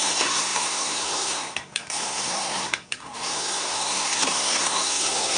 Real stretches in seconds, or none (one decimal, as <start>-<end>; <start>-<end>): none